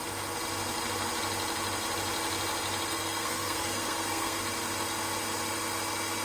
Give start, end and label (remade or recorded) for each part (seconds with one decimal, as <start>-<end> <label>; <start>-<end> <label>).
0.0-2.9 recorded; 2.9-4.4 remade; 4.4-6.2 recorded